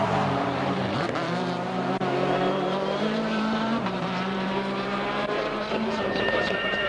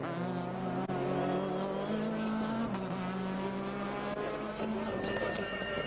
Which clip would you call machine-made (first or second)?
first